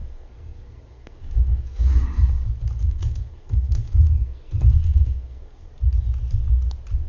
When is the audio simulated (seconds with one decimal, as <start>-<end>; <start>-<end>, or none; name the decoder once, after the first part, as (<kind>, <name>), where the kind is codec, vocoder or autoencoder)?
0.0-1.9 (codec, SNAC); 2.8-5.7